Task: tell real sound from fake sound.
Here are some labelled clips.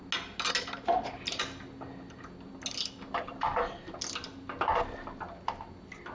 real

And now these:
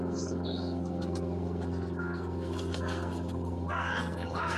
fake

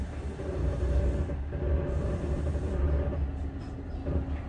real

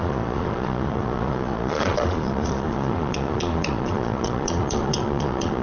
fake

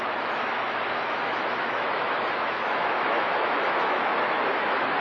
fake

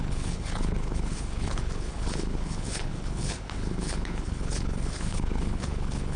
fake